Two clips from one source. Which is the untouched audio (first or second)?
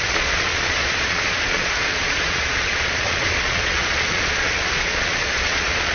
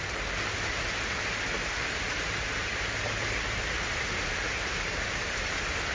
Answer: second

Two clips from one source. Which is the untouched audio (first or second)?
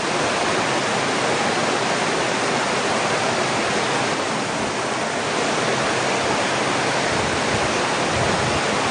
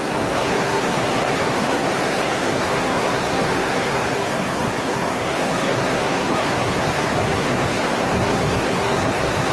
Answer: first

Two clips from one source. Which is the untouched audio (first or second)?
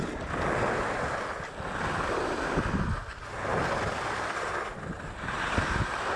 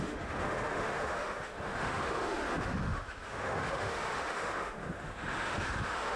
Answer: first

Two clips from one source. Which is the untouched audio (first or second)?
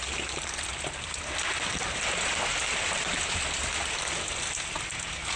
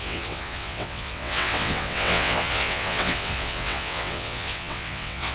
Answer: first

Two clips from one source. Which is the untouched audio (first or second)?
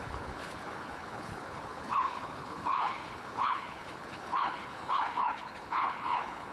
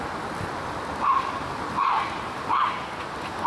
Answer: second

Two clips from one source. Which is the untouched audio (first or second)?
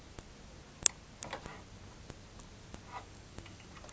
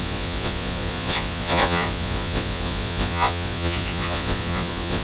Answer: first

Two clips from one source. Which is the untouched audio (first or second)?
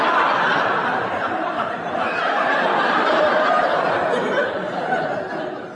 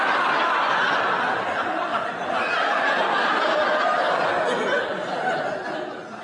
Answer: second